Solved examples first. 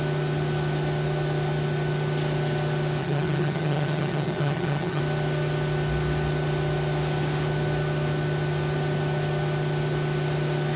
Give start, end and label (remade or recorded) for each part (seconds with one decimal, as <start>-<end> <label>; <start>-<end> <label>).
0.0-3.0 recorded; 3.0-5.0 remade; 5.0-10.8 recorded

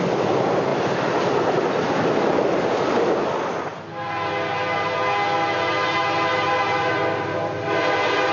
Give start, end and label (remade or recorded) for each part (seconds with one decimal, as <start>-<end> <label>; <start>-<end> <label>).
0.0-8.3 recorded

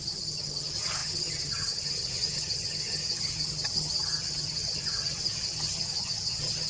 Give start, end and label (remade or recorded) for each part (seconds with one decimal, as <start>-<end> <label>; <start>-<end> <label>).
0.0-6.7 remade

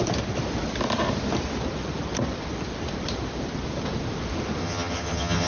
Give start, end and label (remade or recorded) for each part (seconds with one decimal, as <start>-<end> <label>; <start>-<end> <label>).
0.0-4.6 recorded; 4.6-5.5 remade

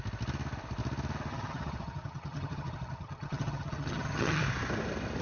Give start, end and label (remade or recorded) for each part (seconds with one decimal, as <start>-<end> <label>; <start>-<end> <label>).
0.0-1.3 recorded; 1.3-4.4 remade; 4.4-5.2 recorded

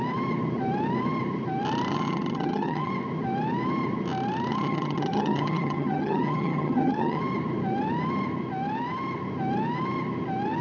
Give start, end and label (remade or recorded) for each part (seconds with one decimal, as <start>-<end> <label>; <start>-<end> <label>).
0.0-1.9 recorded; 1.9-2.9 remade; 2.9-4.5 recorded; 4.5-7.2 remade; 7.2-10.6 recorded

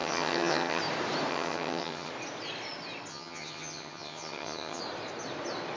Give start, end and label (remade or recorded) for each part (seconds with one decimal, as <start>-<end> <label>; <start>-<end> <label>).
0.0-0.8 remade; 0.8-1.3 recorded; 1.3-2.1 remade; 2.1-3.1 recorded; 3.1-4.8 remade; 4.8-5.8 recorded

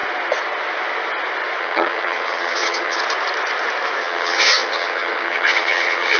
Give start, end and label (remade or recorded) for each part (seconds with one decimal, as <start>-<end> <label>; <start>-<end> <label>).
0.0-1.6 recorded; 1.6-3.0 remade; 3.0-4.0 recorded; 4.0-6.2 remade